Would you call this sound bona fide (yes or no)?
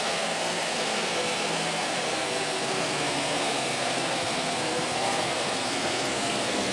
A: no